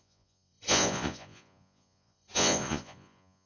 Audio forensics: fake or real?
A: fake